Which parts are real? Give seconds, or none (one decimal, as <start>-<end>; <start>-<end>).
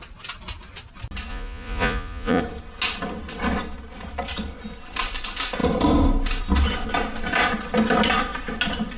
0.0-1.3; 2.4-9.0